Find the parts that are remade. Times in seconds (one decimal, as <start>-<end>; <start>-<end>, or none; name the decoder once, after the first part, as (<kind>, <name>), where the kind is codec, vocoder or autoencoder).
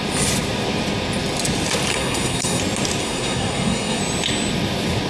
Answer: 1.9-2.6 (codec, SNAC); 3.0-4.0